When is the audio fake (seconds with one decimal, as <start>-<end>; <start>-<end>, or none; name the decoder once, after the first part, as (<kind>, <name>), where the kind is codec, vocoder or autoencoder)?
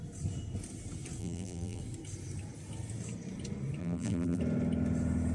1.2-1.8 (vocoder, BigVGAN v2); 3.8-4.4